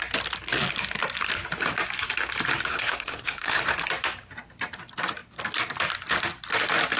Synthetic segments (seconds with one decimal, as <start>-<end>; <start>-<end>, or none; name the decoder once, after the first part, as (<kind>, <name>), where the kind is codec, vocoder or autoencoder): 2.7-3.6 (codec, SNAC)